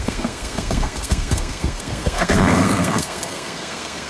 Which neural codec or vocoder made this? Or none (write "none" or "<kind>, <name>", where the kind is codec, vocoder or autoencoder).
codec, SNAC